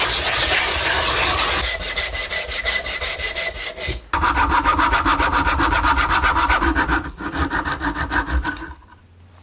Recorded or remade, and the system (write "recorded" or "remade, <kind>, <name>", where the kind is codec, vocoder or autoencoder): recorded